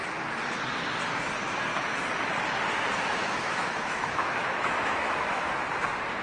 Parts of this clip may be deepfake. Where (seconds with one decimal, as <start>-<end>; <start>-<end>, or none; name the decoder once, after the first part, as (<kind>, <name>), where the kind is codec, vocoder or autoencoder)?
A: 3.2-5.5 (autoencoder, DAC-VAE)